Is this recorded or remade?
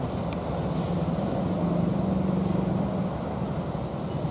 recorded